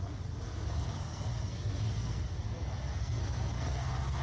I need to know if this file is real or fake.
fake